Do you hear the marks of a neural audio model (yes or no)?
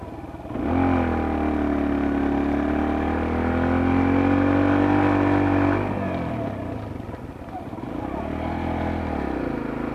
no